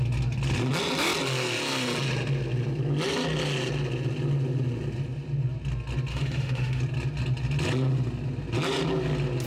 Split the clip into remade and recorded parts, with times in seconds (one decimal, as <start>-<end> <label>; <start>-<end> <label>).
0.0-6.1 recorded; 6.1-6.8 remade; 6.8-9.5 recorded